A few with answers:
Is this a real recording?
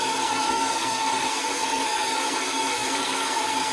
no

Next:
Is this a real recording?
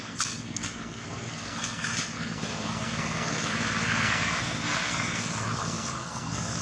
no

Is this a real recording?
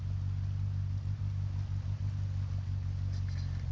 yes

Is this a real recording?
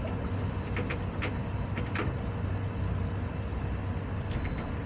yes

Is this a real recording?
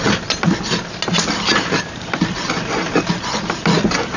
yes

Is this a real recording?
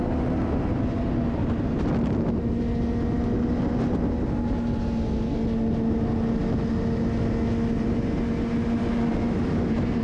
yes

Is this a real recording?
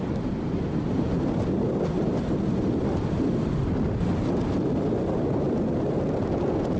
yes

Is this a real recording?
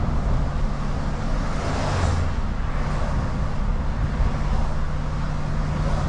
yes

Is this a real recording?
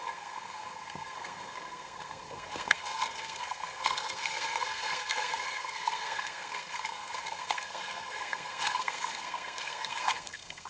no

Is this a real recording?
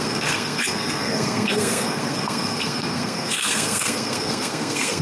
no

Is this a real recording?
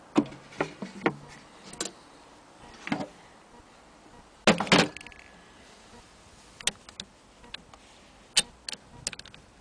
yes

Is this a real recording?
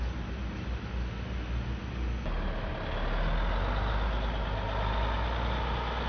yes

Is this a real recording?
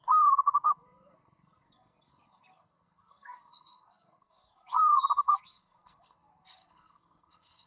no